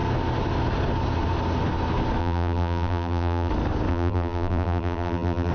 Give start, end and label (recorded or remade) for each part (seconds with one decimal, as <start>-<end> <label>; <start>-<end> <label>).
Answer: 0.0-2.2 recorded; 2.2-3.5 remade; 3.5-3.9 recorded; 3.9-5.5 remade